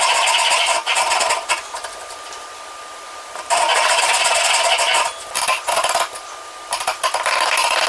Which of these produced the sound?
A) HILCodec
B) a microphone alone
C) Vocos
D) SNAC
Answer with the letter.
B